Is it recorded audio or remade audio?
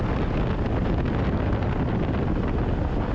recorded